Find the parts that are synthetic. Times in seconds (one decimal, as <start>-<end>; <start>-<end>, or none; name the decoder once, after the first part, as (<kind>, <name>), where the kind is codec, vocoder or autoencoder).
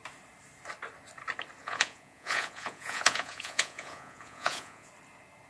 1.6-4.9 (vocoder, Vocos)